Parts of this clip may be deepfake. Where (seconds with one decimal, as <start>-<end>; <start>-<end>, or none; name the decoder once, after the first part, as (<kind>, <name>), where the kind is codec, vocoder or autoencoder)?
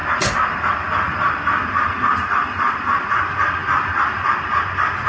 none